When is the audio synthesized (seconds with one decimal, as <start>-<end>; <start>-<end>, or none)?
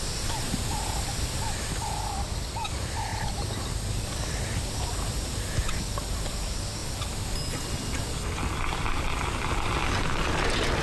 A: none